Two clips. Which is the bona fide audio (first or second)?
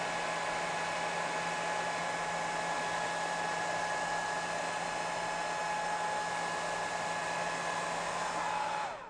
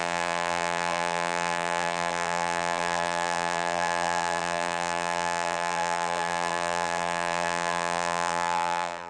first